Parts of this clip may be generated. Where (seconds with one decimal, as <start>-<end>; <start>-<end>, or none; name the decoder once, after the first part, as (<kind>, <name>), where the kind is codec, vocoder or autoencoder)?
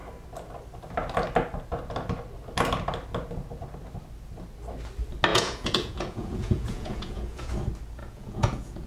5.3-7.5 (vocoder, Vocos); 8.0-8.9